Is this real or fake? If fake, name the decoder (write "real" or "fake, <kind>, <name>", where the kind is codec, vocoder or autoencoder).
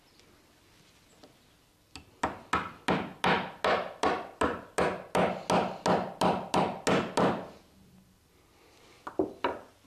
real